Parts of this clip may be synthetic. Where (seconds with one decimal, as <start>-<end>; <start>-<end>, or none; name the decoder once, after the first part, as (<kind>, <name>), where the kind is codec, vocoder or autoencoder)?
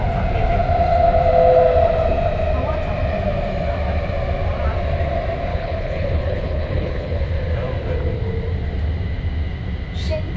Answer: 5.5-7.3 (codec, HILCodec)